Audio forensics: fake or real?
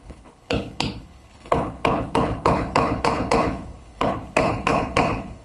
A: fake